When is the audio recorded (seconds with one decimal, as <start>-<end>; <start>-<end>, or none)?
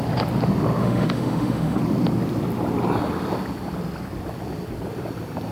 0.0-0.8; 1.8-5.5